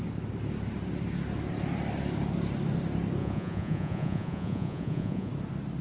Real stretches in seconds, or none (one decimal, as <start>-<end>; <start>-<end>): 0.0-3.2; 5.3-5.8